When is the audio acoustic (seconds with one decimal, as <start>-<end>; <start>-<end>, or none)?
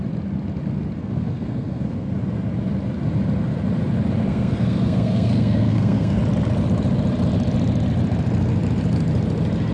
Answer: 0.0-1.0; 2.1-4.3; 6.2-9.7